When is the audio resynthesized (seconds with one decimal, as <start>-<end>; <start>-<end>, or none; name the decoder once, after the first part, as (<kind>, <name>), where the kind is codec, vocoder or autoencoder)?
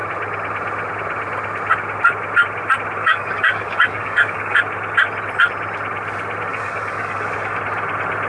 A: 3.0-4.6 (codec, DAC); 6.5-7.6